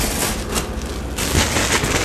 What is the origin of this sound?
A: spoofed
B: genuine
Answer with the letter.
B